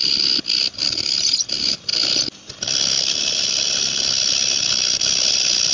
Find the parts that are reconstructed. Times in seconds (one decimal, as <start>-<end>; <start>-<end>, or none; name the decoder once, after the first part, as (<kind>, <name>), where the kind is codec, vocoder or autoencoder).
none